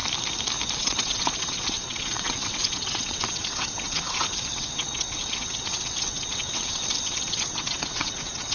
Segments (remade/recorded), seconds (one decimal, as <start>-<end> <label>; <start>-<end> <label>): 0.0-0.8 recorded; 0.8-8.5 remade